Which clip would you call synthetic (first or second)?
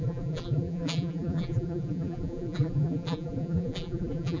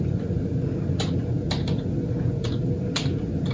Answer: first